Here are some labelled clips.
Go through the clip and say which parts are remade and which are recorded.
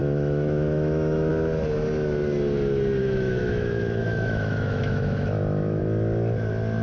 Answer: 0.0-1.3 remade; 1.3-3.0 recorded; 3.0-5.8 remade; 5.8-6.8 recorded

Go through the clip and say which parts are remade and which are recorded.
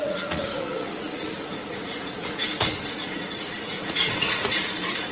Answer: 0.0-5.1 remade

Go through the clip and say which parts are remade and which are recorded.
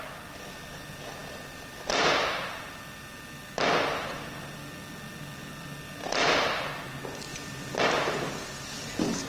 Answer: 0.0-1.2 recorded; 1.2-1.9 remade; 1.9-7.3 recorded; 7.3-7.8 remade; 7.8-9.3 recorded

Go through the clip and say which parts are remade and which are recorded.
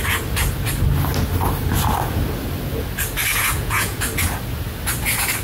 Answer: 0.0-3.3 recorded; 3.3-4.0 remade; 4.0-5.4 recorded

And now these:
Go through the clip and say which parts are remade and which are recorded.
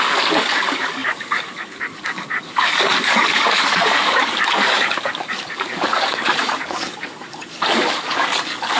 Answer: 0.0-8.8 remade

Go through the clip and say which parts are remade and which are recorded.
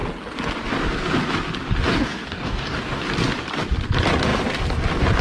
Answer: 0.0-1.9 recorded; 1.9-3.0 remade; 3.0-5.2 recorded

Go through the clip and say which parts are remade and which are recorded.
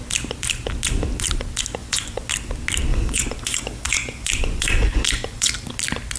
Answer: 0.0-1.8 recorded; 1.8-2.3 remade; 2.3-2.9 recorded; 2.9-5.5 remade; 5.5-6.2 recorded